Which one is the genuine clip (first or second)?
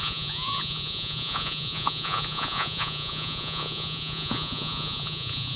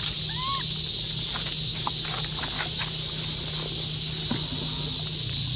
second